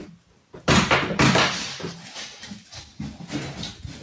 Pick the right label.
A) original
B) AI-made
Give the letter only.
A